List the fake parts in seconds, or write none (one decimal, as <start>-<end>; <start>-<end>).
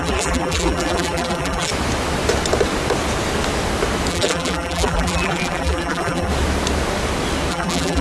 0.0-1.7; 4.1-6.3; 7.5-8.0